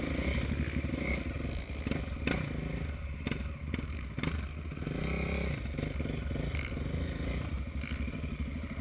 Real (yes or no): yes